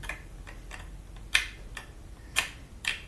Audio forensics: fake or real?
fake